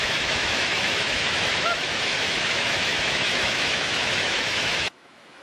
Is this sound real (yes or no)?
no